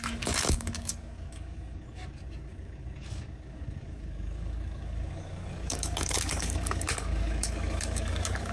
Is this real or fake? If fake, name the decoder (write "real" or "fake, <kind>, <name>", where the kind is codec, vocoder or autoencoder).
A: fake, codec, DAC